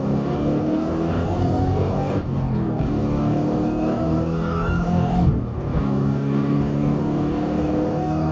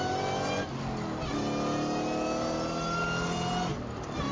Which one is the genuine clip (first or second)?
second